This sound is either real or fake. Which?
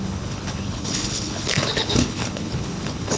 fake